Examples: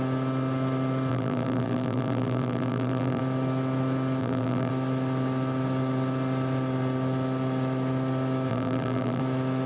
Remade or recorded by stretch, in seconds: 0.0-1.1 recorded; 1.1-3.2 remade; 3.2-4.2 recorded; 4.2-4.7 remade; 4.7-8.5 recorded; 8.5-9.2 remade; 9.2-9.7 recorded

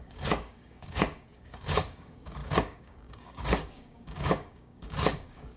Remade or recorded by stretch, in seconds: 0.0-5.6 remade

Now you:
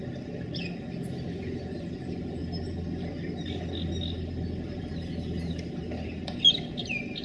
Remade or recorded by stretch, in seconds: 0.0-7.2 recorded